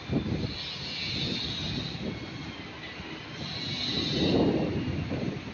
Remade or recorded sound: recorded